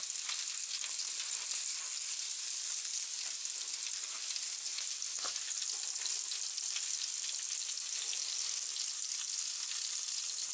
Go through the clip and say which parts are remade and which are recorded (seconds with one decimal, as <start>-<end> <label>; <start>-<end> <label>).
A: 0.0-10.5 recorded